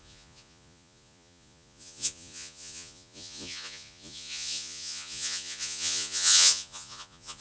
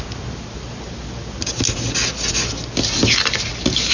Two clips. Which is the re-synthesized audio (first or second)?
first